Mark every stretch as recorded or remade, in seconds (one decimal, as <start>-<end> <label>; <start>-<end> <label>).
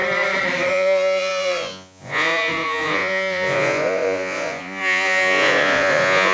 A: 0.0-0.7 recorded; 0.7-6.3 remade